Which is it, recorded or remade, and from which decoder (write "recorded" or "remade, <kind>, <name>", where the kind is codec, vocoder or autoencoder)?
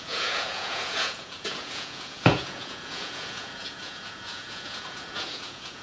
remade, vocoder, Vocos